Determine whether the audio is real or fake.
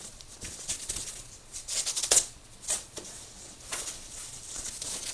fake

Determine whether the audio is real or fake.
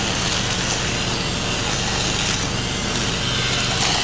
real